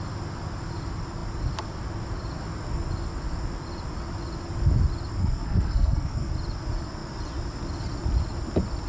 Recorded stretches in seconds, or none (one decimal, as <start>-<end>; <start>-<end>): 0.0-5.2; 6.3-8.9